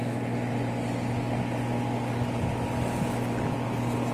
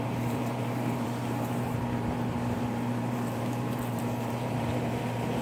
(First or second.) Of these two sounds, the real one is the first